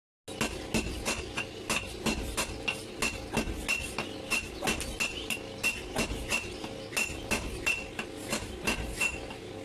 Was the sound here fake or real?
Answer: real